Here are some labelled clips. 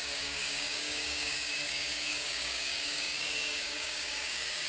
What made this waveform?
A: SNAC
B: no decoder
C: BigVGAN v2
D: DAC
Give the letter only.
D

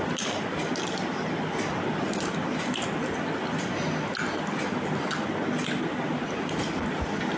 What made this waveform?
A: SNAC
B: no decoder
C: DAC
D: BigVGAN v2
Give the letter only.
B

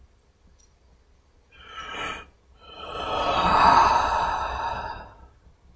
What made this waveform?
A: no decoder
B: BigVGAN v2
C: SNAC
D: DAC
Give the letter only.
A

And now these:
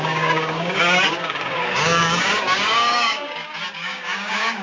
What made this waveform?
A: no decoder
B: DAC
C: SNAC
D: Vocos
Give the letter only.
B